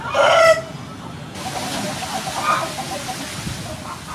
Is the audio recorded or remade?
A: recorded